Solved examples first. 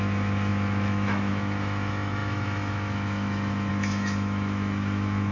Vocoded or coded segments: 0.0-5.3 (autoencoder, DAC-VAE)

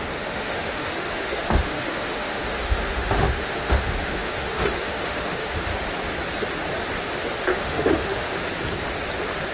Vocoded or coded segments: 0.0-5.7 (autoencoder, DAC-VAE); 7.3-8.4

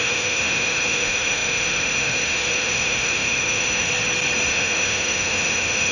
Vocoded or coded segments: 0.0-3.9 (autoencoder, DAC-VAE); 4.5-5.9

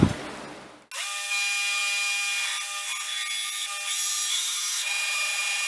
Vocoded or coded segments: 4.3-5.7 (autoencoder, DAC-VAE)

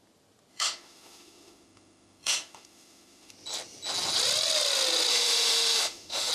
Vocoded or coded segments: 0.5-3.3 (autoencoder, DAC-VAE); 5.1-6.3

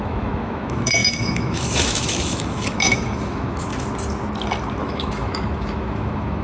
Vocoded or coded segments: 0.0-3.7 (autoencoder, DAC-VAE); 4.8-6.4

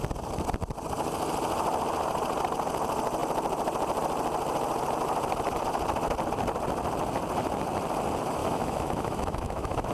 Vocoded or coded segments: 8.4-9.9 (autoencoder, DAC-VAE)

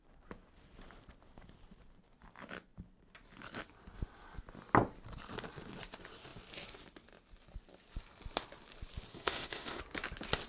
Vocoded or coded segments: 9.1-9.8 (autoencoder, DAC-VAE)